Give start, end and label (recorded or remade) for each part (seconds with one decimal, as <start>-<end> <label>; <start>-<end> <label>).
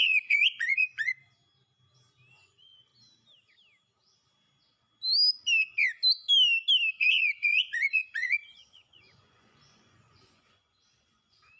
0.0-1.1 remade; 1.1-2.3 recorded; 2.3-2.9 remade; 2.9-6.9 recorded; 6.9-11.6 remade